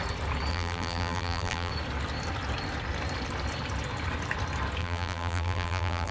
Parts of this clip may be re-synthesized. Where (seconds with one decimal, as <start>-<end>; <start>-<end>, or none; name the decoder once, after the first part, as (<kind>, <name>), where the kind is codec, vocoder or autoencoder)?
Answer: 0.5-1.7 (vocoder, BigVGAN v2); 4.8-6.1